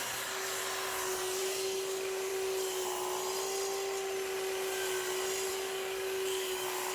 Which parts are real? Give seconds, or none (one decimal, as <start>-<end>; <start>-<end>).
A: 0.6-1.4; 2.3-5.5